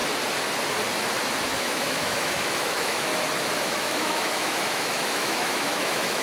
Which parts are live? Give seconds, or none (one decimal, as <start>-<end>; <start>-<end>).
0.0-1.6; 3.1-3.6